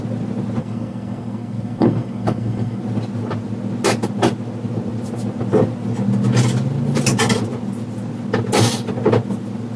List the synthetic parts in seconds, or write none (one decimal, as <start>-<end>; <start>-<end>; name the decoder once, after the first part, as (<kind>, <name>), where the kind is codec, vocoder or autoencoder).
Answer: 0.6-2.8 (codec, SNAC)